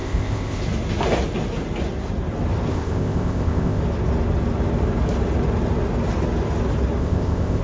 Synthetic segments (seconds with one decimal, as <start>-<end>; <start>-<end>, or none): 0.0-0.6; 2.7-3.8; 7.0-7.6